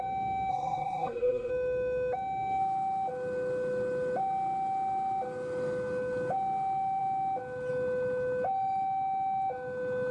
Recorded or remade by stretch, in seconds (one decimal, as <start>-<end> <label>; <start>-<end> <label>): 0.0-0.5 recorded; 0.5-1.5 remade; 1.5-10.1 recorded